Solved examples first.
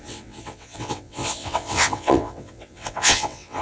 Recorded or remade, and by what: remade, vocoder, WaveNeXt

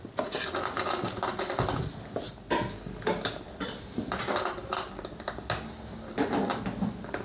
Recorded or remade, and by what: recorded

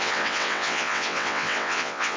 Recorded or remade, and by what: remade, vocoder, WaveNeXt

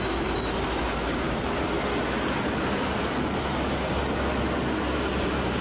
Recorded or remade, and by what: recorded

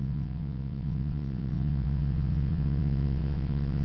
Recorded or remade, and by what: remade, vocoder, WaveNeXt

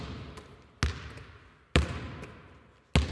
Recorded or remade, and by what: recorded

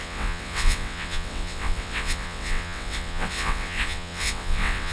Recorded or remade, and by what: remade, vocoder, WaveNeXt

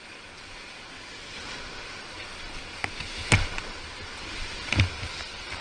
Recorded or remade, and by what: recorded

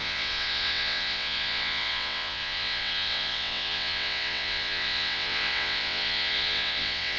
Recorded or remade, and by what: remade, vocoder, WaveNeXt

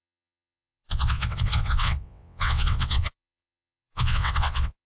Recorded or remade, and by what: remade, vocoder, WaveNeXt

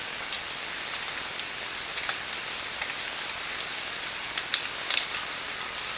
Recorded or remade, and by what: recorded